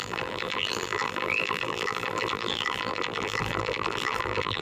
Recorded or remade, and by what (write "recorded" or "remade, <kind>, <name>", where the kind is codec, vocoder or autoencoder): remade, vocoder, BigVGAN v2